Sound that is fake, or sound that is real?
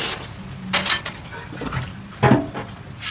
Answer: real